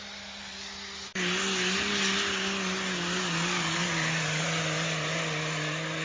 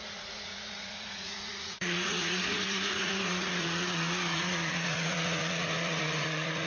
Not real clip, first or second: second